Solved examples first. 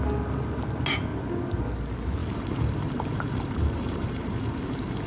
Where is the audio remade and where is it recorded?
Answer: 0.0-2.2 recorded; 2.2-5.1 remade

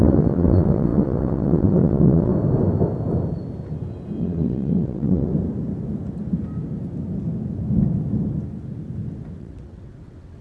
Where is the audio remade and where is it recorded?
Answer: 0.0-2.3 remade; 2.3-4.2 recorded; 4.2-5.3 remade; 5.3-9.4 recorded; 9.4-10.4 remade

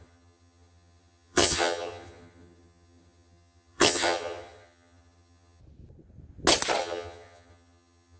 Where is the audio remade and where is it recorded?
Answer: 0.0-5.6 remade; 5.6-6.8 recorded; 6.8-8.2 remade

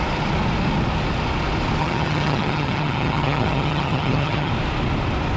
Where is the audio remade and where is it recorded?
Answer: 0.0-1.8 recorded; 1.8-4.5 remade; 4.5-5.4 recorded

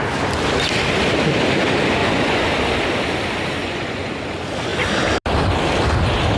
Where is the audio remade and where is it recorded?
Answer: 0.0-2.0 recorded; 2.0-2.5 remade; 2.5-3.6 recorded; 3.6-4.1 remade; 4.1-6.4 recorded

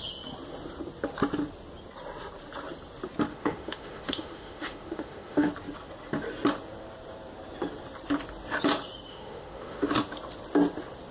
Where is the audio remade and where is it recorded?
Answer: 0.0-3.3 recorded; 3.3-5.5 remade; 5.5-9.1 recorded; 9.1-9.9 remade; 9.9-11.1 recorded

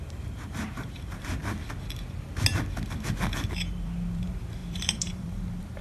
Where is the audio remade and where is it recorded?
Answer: 0.0-1.4 remade; 1.4-3.7 recorded; 3.7-5.8 remade

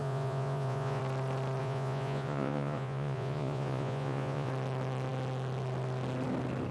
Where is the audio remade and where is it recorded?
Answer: 0.0-1.0 remade; 1.0-1.6 recorded; 1.6-4.5 remade; 4.5-6.7 recorded